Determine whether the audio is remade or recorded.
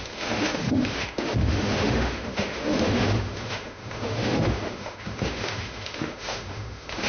remade